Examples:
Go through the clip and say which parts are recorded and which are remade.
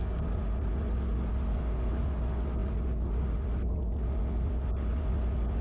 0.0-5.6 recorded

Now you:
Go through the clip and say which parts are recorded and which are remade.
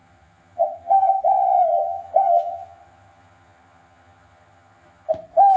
0.0-1.2 remade; 1.2-1.7 recorded; 1.7-5.1 remade; 5.1-5.6 recorded